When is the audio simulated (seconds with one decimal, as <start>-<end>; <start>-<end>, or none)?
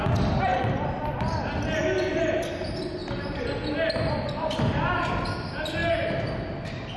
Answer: 3.0-4.6